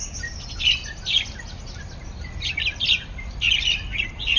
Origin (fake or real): real